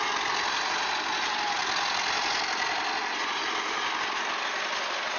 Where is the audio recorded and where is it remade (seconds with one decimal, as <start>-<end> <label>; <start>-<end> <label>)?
0.0-5.2 recorded